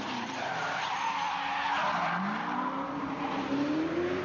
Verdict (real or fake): real